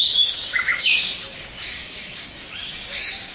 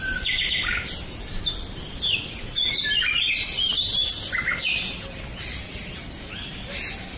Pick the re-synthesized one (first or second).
first